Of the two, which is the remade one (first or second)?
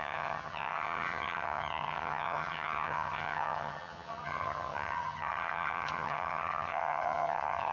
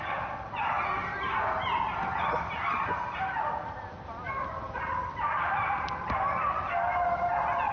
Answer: first